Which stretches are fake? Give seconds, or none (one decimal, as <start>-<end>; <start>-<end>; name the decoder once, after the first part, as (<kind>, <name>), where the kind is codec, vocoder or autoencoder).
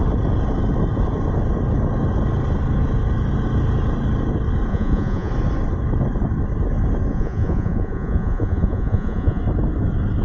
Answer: 4.7-5.3 (vocoder, Vocos); 7.1-9.4